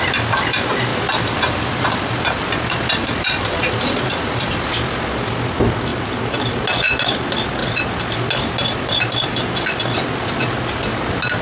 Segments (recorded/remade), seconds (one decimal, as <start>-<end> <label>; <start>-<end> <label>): 0.0-0.9 recorded; 0.9-4.7 remade; 4.7-5.9 recorded; 5.9-6.6 remade; 6.6-11.4 recorded

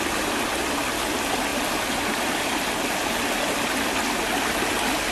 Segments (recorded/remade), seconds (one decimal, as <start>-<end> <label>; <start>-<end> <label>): 0.0-5.1 recorded

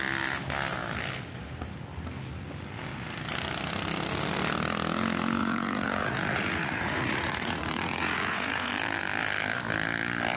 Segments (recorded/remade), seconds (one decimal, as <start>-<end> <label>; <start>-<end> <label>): 0.0-5.4 recorded; 5.4-8.7 remade; 8.7-10.4 recorded

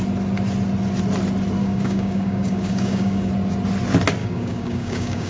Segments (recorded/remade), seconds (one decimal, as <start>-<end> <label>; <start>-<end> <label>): 0.0-1.6 recorded; 1.6-3.3 remade; 3.3-4.2 recorded; 4.2-5.3 remade